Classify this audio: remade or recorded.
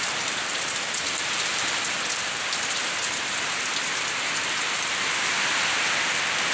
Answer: remade